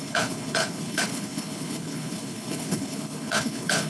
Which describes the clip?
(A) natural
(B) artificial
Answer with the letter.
B